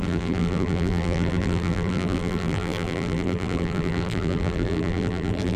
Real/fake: fake